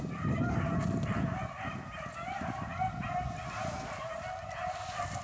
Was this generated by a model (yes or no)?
no